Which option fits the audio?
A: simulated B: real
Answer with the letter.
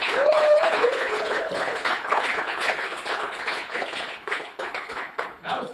A